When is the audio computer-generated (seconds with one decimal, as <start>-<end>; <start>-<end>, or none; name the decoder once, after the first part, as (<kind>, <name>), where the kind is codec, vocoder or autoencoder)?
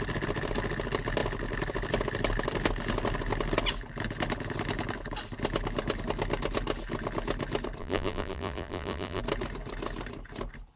7.8-9.2 (vocoder, BigVGAN v2)